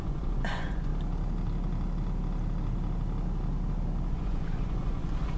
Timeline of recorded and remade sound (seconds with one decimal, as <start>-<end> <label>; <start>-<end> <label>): 0.0-0.9 remade; 0.9-4.1 recorded; 4.1-5.4 remade

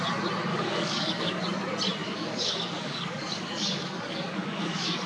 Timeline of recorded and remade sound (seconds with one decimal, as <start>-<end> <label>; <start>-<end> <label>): 0.0-0.5 recorded; 0.5-1.4 remade; 1.4-2.0 recorded; 2.0-5.1 remade

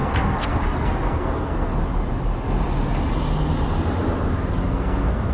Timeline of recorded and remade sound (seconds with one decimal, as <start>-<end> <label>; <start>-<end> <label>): 0.0-1.7 remade; 1.7-4.7 recorded; 4.7-5.3 remade